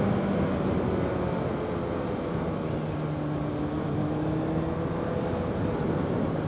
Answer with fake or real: real